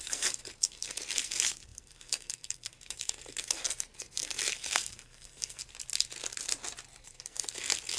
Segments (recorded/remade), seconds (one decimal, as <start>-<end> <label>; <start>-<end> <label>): 0.0-5.6 remade; 5.6-7.0 recorded; 7.0-8.0 remade